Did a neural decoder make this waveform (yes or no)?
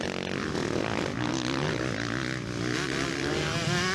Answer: no